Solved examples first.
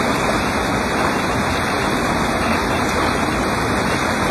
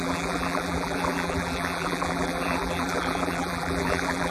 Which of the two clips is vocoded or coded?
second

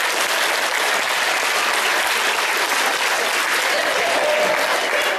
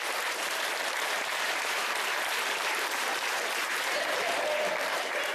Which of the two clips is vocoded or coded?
second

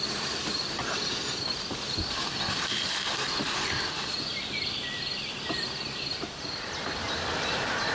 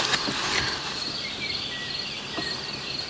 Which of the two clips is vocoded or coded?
first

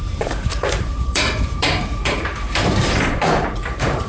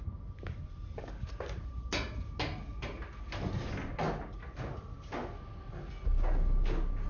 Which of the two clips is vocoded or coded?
first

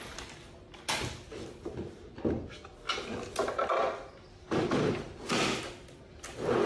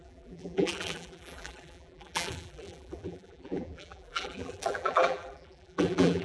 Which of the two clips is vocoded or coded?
second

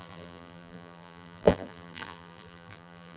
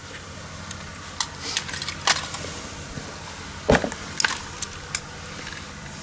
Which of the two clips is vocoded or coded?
first